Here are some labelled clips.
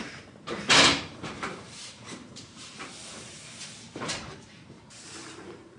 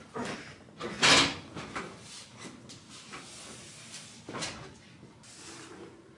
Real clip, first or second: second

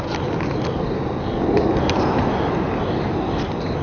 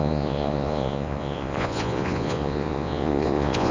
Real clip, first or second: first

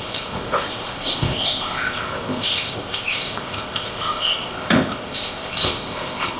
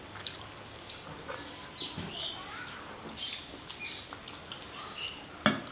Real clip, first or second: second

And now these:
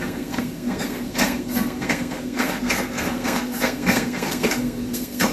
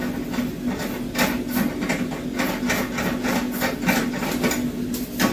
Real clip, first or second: second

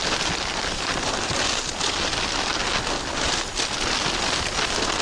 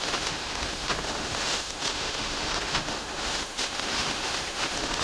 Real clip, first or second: first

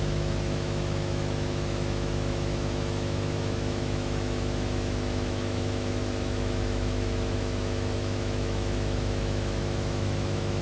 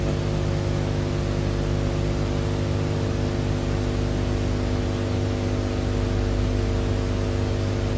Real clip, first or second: second